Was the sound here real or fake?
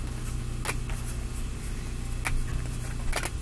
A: real